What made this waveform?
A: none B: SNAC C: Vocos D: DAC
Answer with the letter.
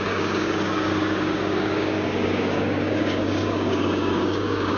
D